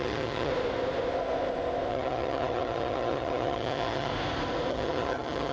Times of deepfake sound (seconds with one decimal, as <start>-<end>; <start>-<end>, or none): 0.0-0.5; 1.9-4.1; 4.7-5.5